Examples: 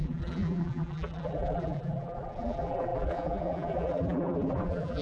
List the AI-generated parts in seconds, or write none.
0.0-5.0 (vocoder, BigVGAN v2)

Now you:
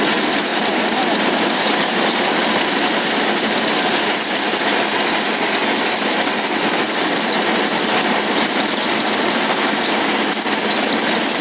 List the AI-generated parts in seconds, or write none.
none

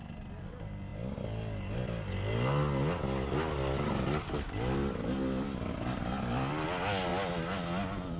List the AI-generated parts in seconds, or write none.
none

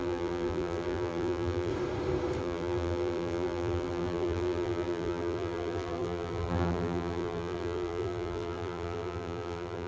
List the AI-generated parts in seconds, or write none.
0.0-1.7 (vocoder, BigVGAN v2); 2.4-9.9

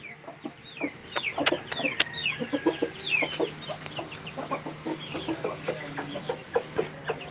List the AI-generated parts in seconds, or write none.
2.2-2.8 (codec, DAC); 4.9-6.3

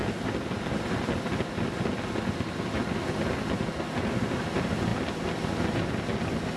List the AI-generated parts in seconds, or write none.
none

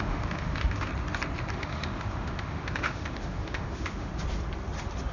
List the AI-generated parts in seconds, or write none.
0.0-0.9 (autoencoder, DAC-VAE); 1.5-4.1